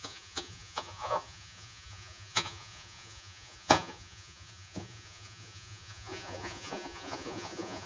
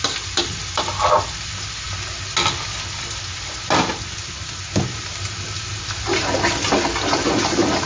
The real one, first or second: second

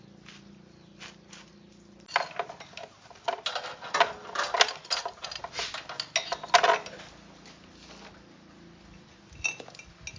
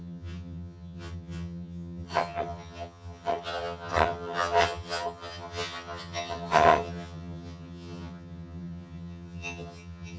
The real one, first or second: first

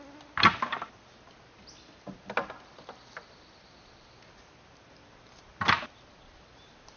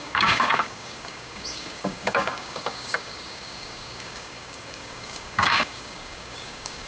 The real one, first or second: first